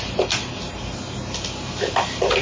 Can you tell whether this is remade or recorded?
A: recorded